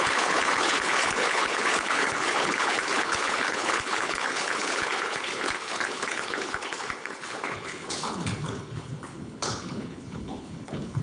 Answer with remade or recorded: remade